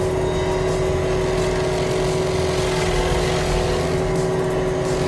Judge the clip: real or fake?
real